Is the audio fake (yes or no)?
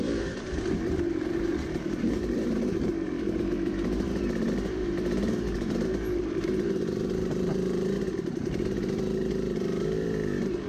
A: yes